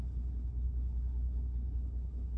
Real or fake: fake